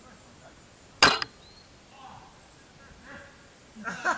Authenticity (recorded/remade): recorded